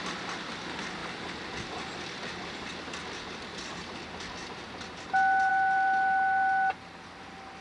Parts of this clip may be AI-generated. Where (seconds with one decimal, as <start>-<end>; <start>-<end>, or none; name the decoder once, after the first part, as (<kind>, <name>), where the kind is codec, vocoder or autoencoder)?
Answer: none

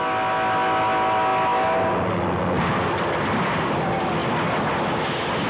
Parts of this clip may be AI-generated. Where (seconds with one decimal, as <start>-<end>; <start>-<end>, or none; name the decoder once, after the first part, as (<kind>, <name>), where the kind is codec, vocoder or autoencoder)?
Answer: none

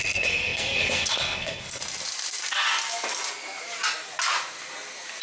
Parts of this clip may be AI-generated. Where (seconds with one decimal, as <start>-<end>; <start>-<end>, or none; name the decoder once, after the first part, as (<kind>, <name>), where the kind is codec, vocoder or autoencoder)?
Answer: 0.0-1.8 (codec, SNAC)

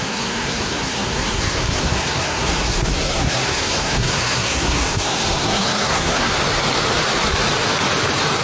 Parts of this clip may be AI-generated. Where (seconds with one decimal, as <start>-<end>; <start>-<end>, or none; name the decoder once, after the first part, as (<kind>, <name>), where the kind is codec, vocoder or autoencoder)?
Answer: 0.0-6.4 (codec, SNAC)

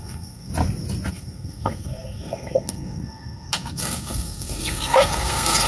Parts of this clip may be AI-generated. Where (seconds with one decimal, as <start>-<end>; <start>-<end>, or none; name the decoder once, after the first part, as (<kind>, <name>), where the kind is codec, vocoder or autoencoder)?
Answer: 0.0-0.5 (codec, SNAC); 1.1-5.7

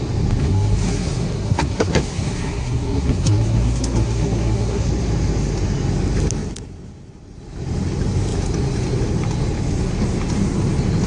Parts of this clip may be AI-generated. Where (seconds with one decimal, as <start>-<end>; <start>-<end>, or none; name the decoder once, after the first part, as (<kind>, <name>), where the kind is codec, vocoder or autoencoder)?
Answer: 0.4-4.9 (codec, SNAC)

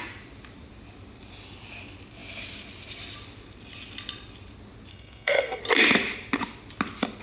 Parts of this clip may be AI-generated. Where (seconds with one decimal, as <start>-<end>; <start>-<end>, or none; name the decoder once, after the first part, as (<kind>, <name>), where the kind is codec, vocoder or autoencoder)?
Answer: 4.9-5.6 (codec, SNAC)